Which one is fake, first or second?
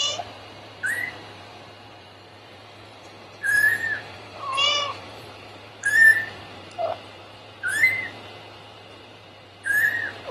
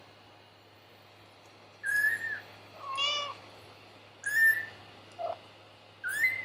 first